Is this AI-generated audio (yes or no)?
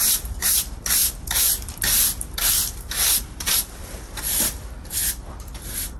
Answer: yes